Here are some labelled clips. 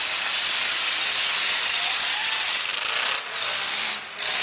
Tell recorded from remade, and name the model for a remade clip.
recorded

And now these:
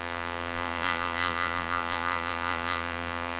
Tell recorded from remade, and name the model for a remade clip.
remade, vocoder, BigVGAN v2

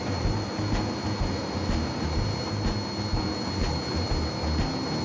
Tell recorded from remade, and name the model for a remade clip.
recorded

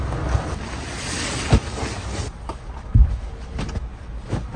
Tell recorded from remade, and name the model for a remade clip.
recorded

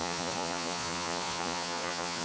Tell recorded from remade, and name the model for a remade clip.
remade, vocoder, Vocos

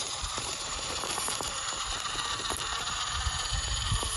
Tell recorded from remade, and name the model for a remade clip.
remade, vocoder, BigVGAN v2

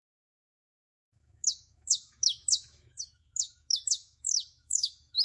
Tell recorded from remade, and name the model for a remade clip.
remade, autoencoder, DAC-VAE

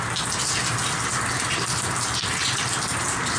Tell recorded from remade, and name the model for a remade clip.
recorded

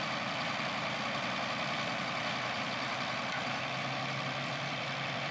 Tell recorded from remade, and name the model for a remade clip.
remade, vocoder, BigVGAN v2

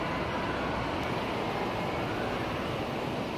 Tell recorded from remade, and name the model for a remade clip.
recorded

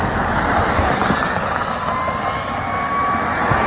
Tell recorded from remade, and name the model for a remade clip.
recorded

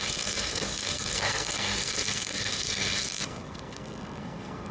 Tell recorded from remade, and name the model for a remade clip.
remade, codec, SNAC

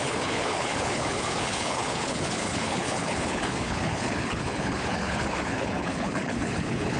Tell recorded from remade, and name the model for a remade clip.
remade, codec, HILCodec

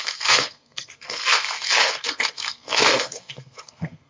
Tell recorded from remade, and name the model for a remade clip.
remade, codec, SNAC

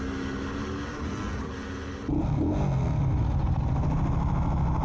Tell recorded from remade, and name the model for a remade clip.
recorded